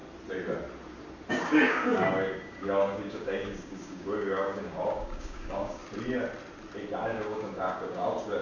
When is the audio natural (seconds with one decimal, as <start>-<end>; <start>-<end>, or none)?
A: 0.0-1.3; 5.8-7.0